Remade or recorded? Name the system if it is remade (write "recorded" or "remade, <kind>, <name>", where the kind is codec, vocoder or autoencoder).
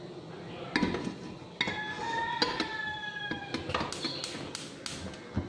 recorded